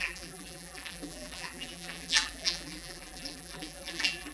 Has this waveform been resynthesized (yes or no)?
yes